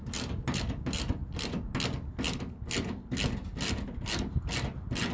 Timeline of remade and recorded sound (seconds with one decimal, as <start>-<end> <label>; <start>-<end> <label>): 0.0-5.1 recorded